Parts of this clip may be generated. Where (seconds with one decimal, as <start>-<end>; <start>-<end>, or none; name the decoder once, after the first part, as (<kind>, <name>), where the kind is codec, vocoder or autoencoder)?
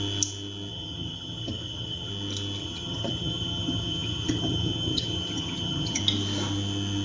0.7-2.1 (vocoder, HiFi-GAN); 2.6-6.0